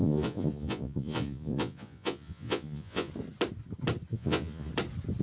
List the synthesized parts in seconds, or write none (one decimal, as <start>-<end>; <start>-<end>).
0.0-3.1; 4.1-4.7